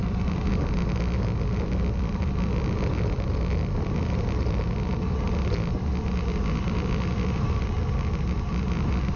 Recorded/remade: recorded